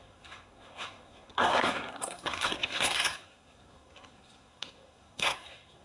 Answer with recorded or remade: remade